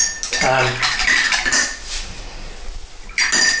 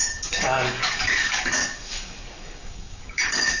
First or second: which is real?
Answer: first